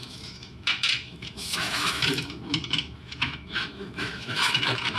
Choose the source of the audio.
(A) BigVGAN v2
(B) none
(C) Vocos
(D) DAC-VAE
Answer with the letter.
D